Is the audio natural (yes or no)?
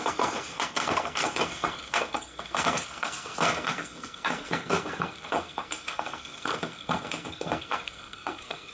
no